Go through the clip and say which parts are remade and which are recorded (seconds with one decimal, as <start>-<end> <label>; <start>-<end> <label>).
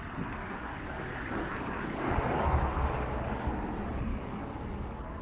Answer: 0.0-0.4 recorded; 0.4-3.5 remade; 3.5-4.1 recorded; 4.1-5.2 remade